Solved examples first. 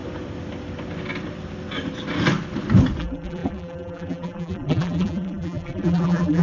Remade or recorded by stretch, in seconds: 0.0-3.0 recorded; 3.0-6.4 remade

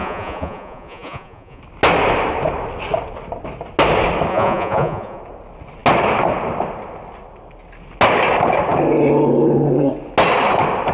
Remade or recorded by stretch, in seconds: 0.0-1.6 remade; 1.6-4.3 recorded; 4.3-5.2 remade; 5.2-10.9 recorded

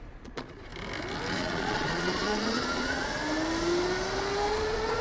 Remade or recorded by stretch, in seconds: 0.0-0.7 remade; 0.7-1.3 recorded; 1.3-3.1 remade; 3.1-4.5 recorded; 4.5-5.0 remade